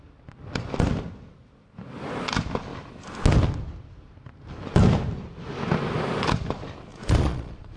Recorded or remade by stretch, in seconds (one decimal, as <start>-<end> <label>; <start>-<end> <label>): 0.0-6.9 recorded; 6.9-7.8 remade

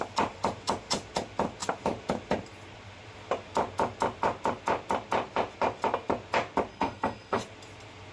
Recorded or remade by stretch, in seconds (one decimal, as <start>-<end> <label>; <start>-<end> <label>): 0.0-6.7 recorded; 6.7-7.4 remade; 7.4-8.1 recorded